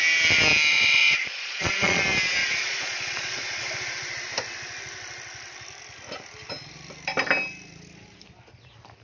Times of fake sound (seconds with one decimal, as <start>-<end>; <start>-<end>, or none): 0.7-2.0; 2.4-3.6